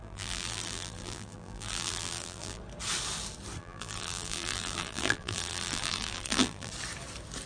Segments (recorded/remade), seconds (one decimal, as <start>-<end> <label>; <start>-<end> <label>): 0.0-2.6 remade; 2.6-3.6 recorded; 3.6-6.7 remade; 6.7-7.5 recorded